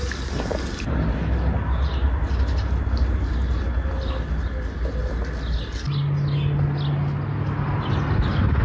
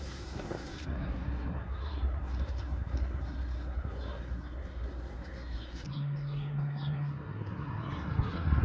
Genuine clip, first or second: first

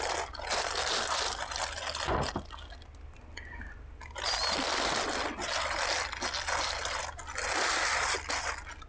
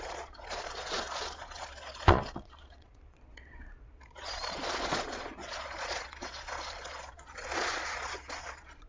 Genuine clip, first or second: first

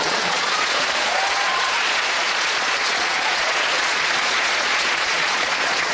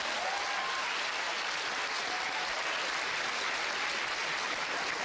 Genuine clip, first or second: second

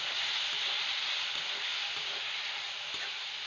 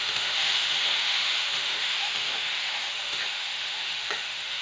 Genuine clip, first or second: first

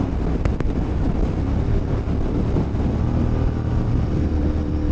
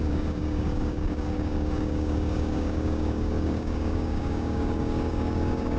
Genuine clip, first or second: first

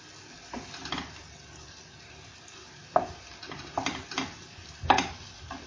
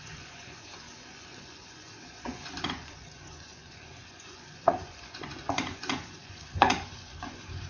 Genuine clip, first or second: first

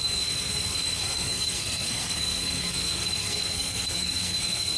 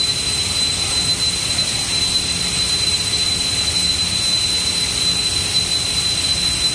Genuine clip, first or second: second